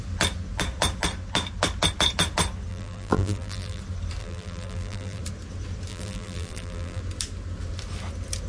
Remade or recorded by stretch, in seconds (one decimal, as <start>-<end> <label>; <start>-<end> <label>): 0.0-2.7 recorded; 2.7-3.8 remade; 3.8-4.2 recorded; 4.2-5.2 remade; 5.2-5.9 recorded; 5.9-7.0 remade; 7.0-8.5 recorded